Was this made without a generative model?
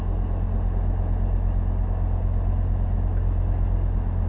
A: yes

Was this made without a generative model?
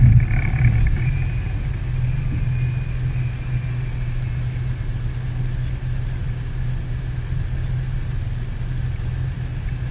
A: yes